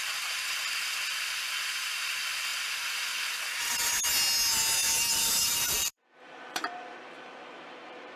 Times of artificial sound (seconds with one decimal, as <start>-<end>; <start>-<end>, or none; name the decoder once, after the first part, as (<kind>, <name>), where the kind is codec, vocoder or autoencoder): 4.8-8.2 (vocoder, BigVGAN v2)